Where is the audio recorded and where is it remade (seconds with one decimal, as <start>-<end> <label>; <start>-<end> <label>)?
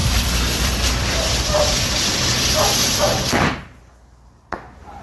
0.0-2.5 remade; 2.5-5.0 recorded